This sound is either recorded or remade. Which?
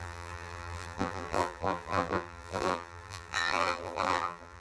remade